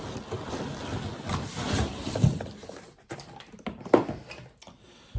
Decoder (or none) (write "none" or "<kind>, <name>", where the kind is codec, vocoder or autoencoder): none